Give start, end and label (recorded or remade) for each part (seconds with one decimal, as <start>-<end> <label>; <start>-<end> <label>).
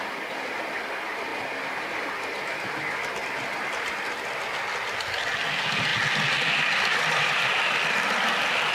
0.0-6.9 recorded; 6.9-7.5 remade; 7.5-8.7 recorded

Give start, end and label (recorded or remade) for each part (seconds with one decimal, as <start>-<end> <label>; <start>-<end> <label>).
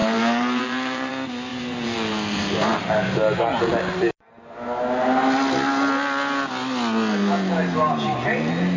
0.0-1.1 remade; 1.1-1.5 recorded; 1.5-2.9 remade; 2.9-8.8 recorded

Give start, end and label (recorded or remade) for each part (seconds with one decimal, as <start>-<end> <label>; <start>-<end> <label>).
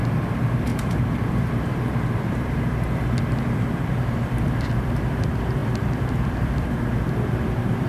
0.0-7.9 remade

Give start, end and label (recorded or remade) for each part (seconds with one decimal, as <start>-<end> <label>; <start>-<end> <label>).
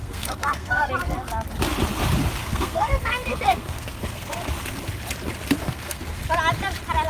0.0-0.9 remade; 0.9-2.4 recorded; 2.4-4.4 remade; 4.4-5.6 recorded; 5.6-6.2 remade; 6.2-7.1 recorded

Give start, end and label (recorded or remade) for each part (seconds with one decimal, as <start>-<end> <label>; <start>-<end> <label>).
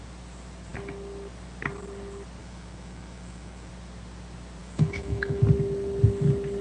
0.0-2.4 recorded; 2.4-3.7 remade; 3.7-4.6 recorded; 4.6-5.4 remade; 5.4-6.6 recorded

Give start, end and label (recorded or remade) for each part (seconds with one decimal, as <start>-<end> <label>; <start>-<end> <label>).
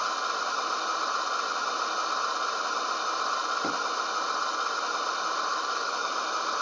0.0-5.5 recorded; 5.5-6.1 remade; 6.1-6.6 recorded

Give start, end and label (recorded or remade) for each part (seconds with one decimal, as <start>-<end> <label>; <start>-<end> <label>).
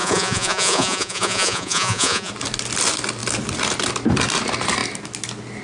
0.0-2.3 remade; 2.3-5.6 recorded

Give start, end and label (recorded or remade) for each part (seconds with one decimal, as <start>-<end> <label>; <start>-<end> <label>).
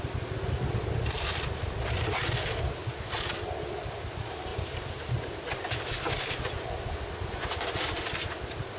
0.0-8.8 recorded